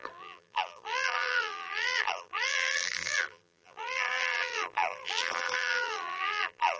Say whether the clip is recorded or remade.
remade